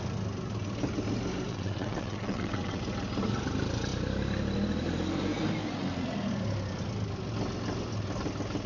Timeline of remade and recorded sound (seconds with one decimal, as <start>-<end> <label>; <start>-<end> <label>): 0.0-1.5 recorded; 1.5-2.8 remade; 2.8-8.7 recorded